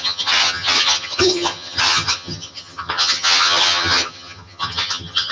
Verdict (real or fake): fake